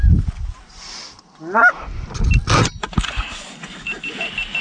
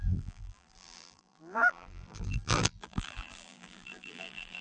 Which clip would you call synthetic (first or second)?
second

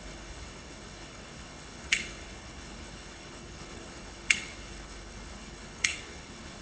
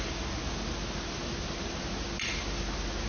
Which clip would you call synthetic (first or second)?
first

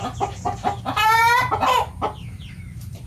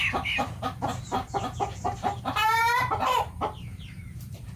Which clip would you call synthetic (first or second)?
second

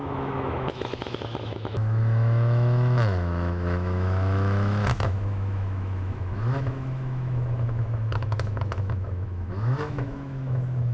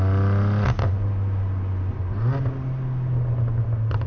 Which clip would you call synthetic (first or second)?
first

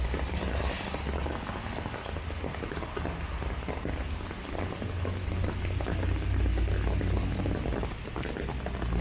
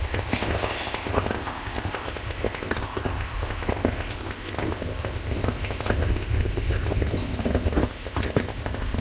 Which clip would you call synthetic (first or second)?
second